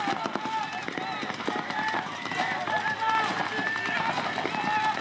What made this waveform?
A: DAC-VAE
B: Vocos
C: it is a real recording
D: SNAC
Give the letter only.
C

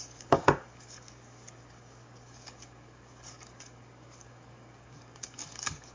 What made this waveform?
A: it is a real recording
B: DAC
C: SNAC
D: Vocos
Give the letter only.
B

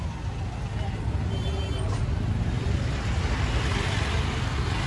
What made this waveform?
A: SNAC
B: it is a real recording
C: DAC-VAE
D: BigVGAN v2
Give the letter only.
B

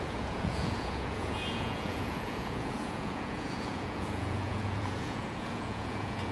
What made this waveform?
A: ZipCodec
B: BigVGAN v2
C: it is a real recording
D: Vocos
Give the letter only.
D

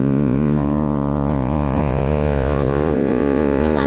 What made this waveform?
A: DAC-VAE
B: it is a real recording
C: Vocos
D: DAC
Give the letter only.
C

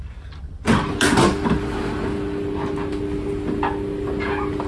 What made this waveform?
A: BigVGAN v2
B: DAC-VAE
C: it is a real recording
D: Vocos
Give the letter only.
C